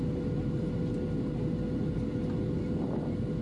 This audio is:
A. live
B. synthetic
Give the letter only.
A